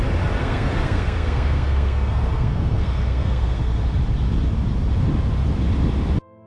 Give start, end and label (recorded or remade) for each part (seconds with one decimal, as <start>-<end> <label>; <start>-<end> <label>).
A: 0.0-0.4 recorded; 0.4-3.8 remade; 3.8-6.5 recorded